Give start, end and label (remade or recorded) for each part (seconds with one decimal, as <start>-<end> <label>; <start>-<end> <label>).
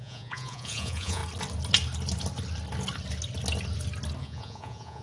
0.0-1.2 remade; 1.2-4.2 recorded; 4.2-5.0 remade